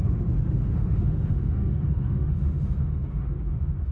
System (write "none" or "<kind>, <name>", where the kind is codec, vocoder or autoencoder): autoencoder, DAC-VAE